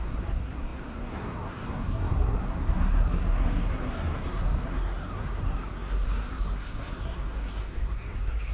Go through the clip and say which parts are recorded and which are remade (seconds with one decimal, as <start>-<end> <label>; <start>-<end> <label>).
0.0-8.5 remade

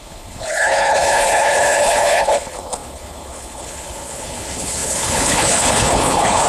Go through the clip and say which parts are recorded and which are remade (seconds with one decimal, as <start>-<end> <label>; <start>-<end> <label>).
0.0-6.5 remade

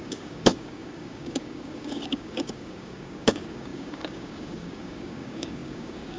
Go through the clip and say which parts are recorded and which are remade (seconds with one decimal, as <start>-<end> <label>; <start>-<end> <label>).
0.0-6.2 remade

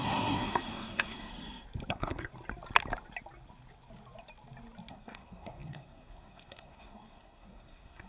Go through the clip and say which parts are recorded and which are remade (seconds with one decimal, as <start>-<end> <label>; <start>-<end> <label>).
0.0-1.3 remade; 1.3-1.9 recorded; 1.9-2.3 remade; 2.3-4.9 recorded; 4.9-8.1 remade

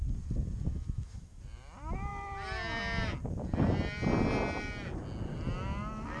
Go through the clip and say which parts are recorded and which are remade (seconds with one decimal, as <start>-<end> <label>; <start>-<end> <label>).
0.0-0.7 recorded; 0.7-1.4 remade; 1.4-6.2 recorded

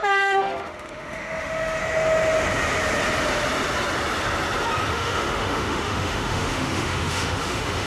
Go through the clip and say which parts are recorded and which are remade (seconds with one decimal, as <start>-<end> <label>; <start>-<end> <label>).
0.0-1.8 remade; 1.8-4.9 recorded; 4.9-7.9 remade

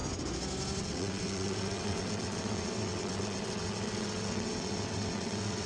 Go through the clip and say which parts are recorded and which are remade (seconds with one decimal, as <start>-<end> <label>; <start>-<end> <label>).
0.0-0.8 recorded; 0.8-5.7 remade

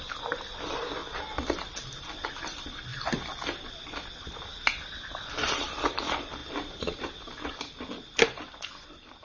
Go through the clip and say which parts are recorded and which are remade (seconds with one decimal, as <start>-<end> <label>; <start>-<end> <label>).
0.0-1.0 remade; 1.0-2.0 recorded; 2.0-2.9 remade; 2.9-3.8 recorded; 3.8-6.4 remade; 6.4-7.0 recorded; 7.0-9.2 remade